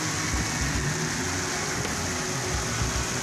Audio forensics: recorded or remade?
recorded